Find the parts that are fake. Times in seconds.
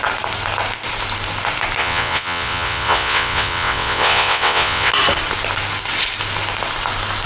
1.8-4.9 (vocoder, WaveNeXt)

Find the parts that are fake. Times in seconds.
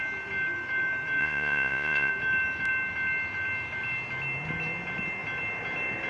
1.2-2.1 (vocoder, Vocos)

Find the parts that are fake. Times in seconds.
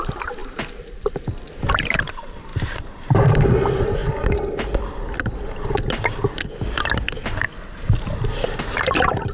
0.0-4.0 (vocoder, BigVGAN v2); 8.6-9.3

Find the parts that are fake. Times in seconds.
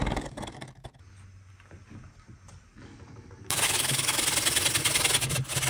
0.0-0.9 (codec, DAC); 2.7-4.2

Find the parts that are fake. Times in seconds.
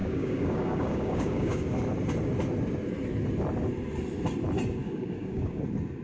0.0-1.7 (codec, DAC); 4.8-5.6